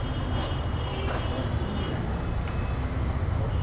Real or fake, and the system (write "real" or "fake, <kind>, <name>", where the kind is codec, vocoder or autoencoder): real